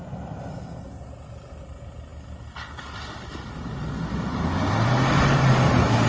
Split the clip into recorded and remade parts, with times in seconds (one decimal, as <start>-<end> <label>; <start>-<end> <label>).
0.0-6.1 recorded